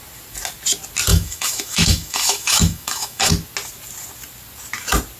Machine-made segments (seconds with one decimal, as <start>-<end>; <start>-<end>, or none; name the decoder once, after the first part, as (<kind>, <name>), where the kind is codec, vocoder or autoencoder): 1.1-3.3 (autoencoder, DAC-VAE)